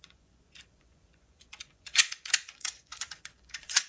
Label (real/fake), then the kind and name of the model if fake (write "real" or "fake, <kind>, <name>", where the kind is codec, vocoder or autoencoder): fake, vocoder, Vocos